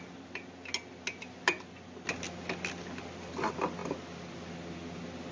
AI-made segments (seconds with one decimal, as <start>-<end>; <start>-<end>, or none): none